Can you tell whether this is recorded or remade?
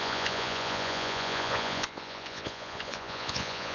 remade